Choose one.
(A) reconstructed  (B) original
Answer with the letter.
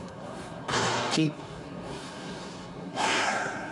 A